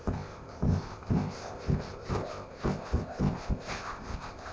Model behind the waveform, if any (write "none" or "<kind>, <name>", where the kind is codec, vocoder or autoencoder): codec, ZipCodec